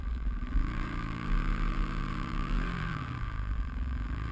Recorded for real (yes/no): no